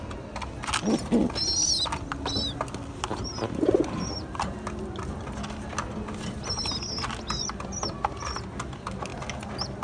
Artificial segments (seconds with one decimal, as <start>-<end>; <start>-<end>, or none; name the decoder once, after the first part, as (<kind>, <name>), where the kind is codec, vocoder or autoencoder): none